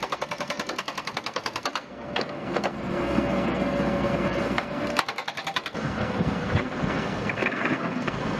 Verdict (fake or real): fake